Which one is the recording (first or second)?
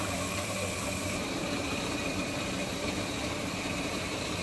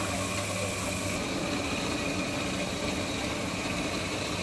second